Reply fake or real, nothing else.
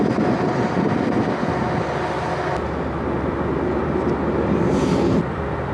real